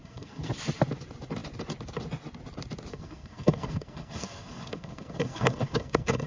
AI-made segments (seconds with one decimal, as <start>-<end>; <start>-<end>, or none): 0.0-0.5; 2.9-6.3